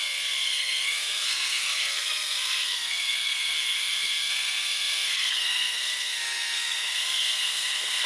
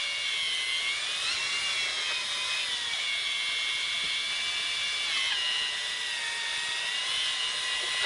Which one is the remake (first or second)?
first